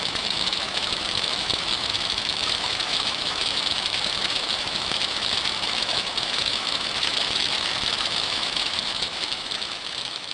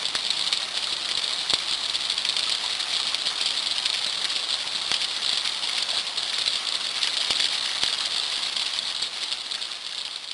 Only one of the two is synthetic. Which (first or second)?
first